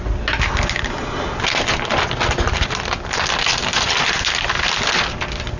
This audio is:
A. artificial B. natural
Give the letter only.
B